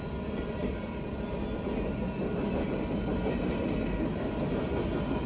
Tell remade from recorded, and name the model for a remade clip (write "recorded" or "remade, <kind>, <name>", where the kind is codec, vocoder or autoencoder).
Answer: recorded